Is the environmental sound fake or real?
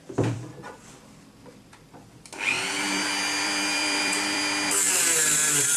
fake